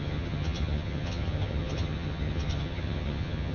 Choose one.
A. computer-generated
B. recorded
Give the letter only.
A